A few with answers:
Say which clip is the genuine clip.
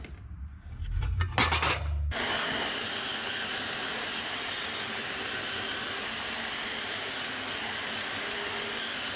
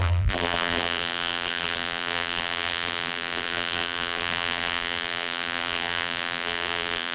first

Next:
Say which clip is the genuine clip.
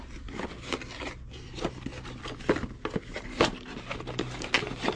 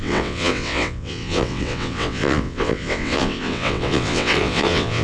first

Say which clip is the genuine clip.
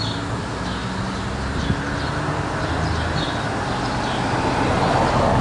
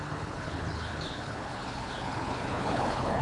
first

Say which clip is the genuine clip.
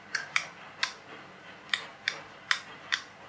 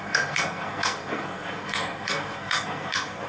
first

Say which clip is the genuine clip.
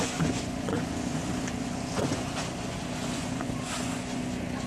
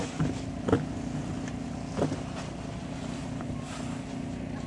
second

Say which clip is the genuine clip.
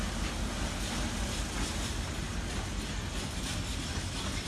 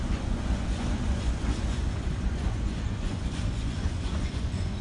first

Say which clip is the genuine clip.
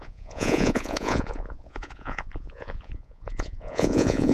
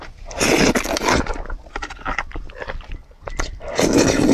second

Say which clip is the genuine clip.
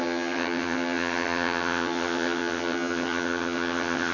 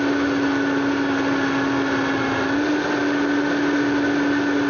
second